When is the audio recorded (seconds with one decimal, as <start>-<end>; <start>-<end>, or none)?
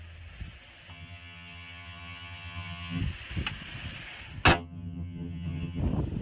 0.0-0.9; 3.0-4.5; 5.8-6.2